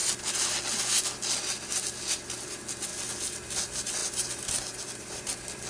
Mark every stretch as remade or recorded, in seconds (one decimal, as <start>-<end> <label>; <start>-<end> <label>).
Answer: 0.0-0.8 recorded; 0.8-2.9 remade; 2.9-3.6 recorded; 3.6-5.7 remade